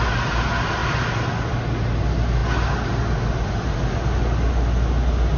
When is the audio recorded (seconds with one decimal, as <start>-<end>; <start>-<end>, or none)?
0.0-5.4